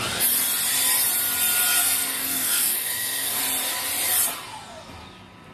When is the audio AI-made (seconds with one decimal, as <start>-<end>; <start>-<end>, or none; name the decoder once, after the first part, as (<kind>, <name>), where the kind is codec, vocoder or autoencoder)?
1.8-3.4 (codec, SNAC)